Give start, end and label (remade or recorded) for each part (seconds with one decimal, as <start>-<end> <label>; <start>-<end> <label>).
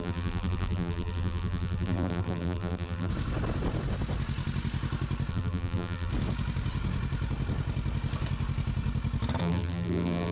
0.0-3.1 remade; 3.1-5.3 recorded; 5.3-6.1 remade; 6.1-9.4 recorded; 9.4-10.3 remade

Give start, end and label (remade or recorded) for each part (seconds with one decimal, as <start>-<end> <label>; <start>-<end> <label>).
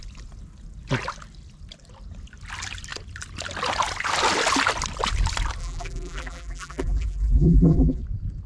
0.0-5.6 recorded; 5.6-8.0 remade; 8.0-8.5 recorded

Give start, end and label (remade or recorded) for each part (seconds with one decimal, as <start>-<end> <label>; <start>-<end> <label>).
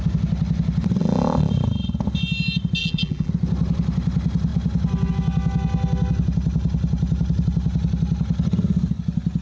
0.0-1.0 recorded; 1.0-1.5 remade; 1.5-2.8 recorded; 2.8-3.3 remade; 3.3-9.4 recorded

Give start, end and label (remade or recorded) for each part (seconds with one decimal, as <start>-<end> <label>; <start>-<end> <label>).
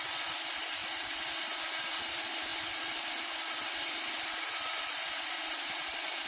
0.0-0.8 remade; 0.8-2.0 recorded; 2.0-2.5 remade; 2.5-3.5 recorded; 3.5-6.3 remade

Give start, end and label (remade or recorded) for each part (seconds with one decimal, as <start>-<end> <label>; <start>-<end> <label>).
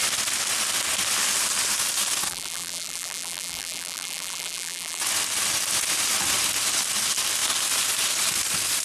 0.0-2.3 recorded; 2.3-5.0 remade; 5.0-8.8 recorded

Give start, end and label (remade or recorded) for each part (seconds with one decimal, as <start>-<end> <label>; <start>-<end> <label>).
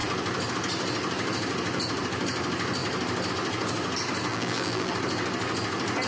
0.0-4.3 recorded; 4.3-4.9 remade; 4.9-6.1 recorded